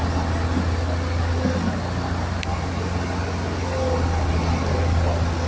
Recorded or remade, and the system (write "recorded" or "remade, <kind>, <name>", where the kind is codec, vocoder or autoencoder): recorded